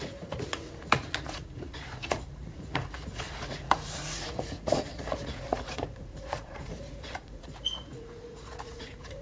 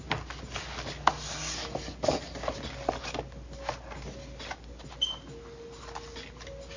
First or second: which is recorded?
second